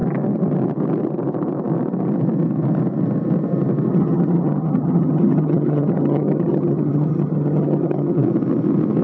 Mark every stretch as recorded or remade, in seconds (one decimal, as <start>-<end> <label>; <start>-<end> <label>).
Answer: 0.0-3.9 recorded; 3.9-8.2 remade; 8.2-9.0 recorded